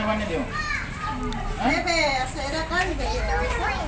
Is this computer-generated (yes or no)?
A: no